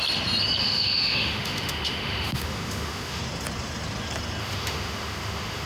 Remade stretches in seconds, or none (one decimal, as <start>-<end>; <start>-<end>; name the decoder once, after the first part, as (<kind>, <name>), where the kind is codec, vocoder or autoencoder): 0.6-3.2 (autoencoder, DAC-VAE); 4.4-5.7

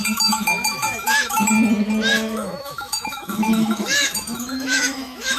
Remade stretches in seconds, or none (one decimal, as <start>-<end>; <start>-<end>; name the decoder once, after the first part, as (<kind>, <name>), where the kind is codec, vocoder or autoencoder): 0.0-1.5 (autoencoder, DAC-VAE); 2.1-5.4